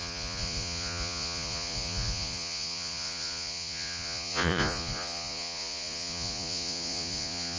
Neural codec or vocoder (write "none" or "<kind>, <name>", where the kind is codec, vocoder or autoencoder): vocoder, Vocos